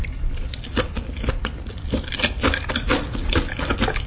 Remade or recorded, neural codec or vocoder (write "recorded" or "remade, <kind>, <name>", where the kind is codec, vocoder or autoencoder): recorded